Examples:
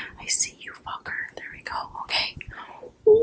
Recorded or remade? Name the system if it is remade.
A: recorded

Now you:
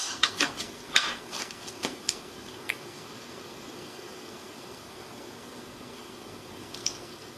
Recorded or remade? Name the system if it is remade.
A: remade, codec, SNAC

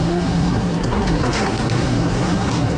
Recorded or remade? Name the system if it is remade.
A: remade, codec, SNAC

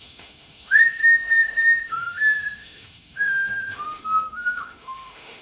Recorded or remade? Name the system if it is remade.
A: remade, autoencoder, DAC-VAE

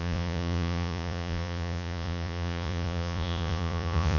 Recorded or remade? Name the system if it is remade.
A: remade, vocoder, Vocos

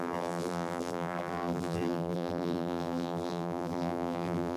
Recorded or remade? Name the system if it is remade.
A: remade, vocoder, BigVGAN v2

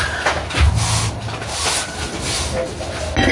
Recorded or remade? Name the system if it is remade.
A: recorded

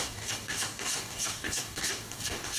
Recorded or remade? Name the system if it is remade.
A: remade, codec, DAC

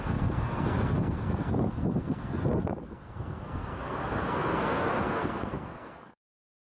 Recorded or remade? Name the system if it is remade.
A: remade, codec, SNAC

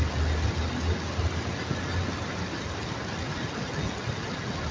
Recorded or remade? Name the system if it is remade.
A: recorded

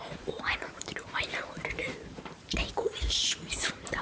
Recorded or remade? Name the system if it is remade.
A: remade, vocoder, BigVGAN v2